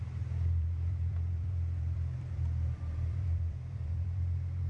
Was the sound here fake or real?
fake